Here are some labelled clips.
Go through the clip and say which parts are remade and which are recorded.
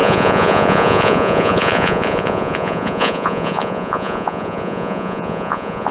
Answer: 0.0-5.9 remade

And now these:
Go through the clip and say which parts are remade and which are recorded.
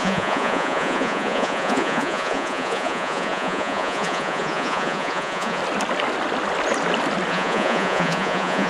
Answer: 0.0-5.6 remade; 5.6-7.3 recorded; 7.3-8.7 remade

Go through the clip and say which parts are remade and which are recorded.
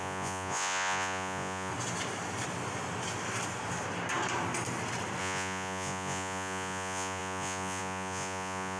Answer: 0.0-1.7 remade; 1.7-5.2 recorded; 5.2-8.8 remade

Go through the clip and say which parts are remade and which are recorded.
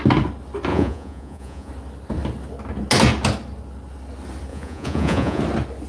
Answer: 0.0-0.7 recorded; 0.7-1.7 remade; 1.7-4.5 recorded; 4.5-5.4 remade; 5.4-5.9 recorded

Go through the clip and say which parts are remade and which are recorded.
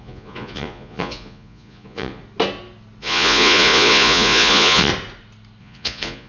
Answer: 0.0-2.2 remade; 2.2-3.0 recorded; 3.0-4.9 remade; 4.9-5.6 recorded; 5.6-6.3 remade